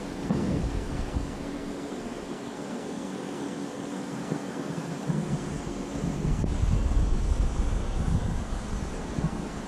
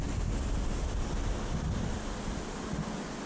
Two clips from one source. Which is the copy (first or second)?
first